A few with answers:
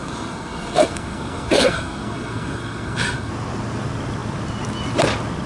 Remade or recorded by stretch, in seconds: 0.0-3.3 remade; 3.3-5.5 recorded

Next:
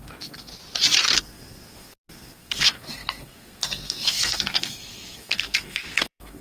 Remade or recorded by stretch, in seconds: 0.0-0.5 remade; 0.5-1.2 recorded; 1.2-6.4 remade

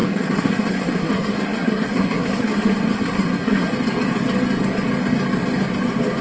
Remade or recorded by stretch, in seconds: 0.0-3.7 remade; 3.7-6.2 recorded

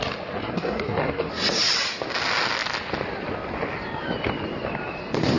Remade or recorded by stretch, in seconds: 0.0-0.4 recorded; 0.4-1.3 remade; 1.3-5.4 recorded